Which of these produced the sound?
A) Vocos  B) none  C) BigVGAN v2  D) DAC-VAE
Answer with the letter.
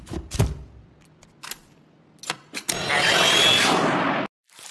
B